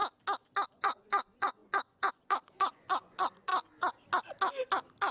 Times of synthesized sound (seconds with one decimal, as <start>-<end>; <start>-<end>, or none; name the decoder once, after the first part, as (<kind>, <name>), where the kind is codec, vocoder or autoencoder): 0.8-3.5 (vocoder, Vocos)